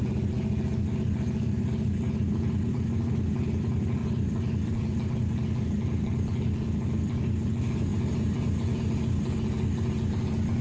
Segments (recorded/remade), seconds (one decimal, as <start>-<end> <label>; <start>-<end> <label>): 0.0-10.6 recorded